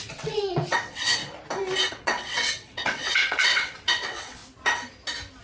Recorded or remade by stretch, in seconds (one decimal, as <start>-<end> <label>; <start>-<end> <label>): 0.0-1.2 remade; 1.2-1.9 recorded; 1.9-4.4 remade; 4.4-5.4 recorded